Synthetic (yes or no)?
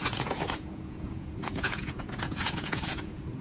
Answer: yes